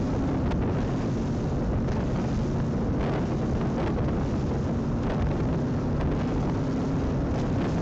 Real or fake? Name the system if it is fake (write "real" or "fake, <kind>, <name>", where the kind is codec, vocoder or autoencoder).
real